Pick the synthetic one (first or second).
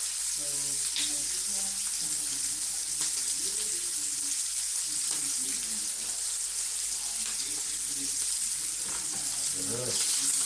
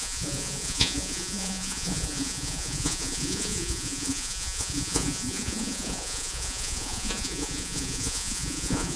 second